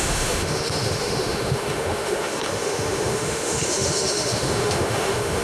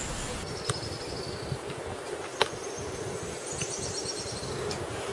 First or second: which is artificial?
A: first